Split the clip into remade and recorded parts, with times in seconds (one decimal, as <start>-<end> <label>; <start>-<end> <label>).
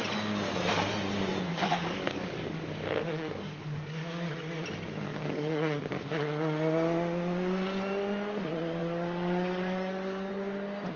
0.0-1.5 recorded; 1.5-4.1 remade; 4.1-5.1 recorded; 5.1-6.0 remade; 6.0-8.8 recorded; 8.8-10.3 remade; 10.3-11.0 recorded